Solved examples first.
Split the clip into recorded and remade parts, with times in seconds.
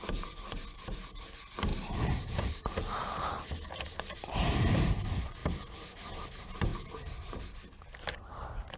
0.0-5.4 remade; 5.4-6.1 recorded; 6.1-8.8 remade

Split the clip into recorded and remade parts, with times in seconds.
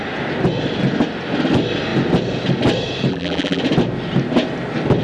0.0-3.1 recorded; 3.1-3.6 remade; 3.6-5.0 recorded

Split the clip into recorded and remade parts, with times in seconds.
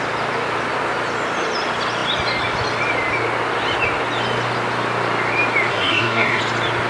0.0-5.7 recorded; 5.7-6.4 remade; 6.4-6.9 recorded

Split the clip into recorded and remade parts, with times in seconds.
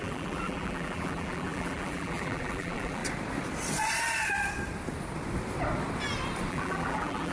0.0-3.0 remade; 3.0-6.5 recorded; 6.5-7.3 remade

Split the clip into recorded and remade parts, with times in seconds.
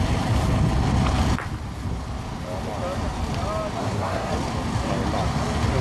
0.0-3.8 recorded; 3.8-4.3 remade; 4.3-5.8 recorded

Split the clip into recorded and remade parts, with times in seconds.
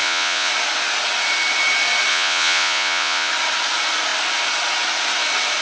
0.0-0.5 remade; 0.5-2.1 recorded; 2.1-3.3 remade; 3.3-5.6 recorded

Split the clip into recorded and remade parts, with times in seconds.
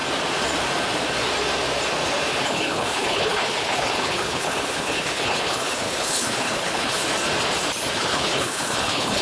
0.0-2.4 recorded; 2.4-7.0 remade; 7.0-7.9 recorded; 7.9-9.2 remade